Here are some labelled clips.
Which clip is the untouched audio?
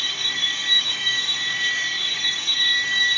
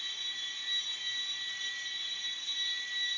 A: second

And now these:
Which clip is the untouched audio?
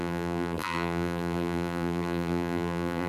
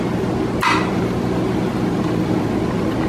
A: second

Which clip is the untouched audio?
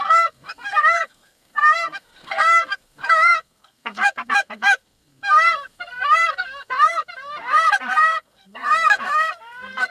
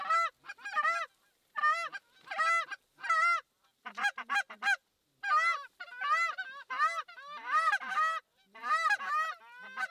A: second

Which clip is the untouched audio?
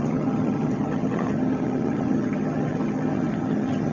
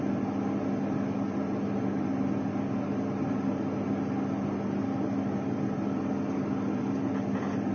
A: second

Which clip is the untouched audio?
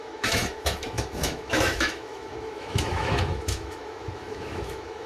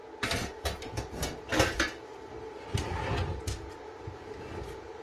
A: second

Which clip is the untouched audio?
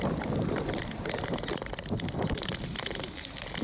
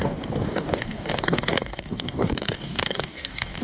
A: first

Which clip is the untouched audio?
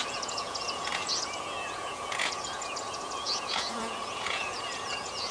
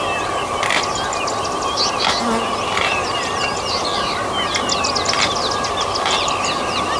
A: second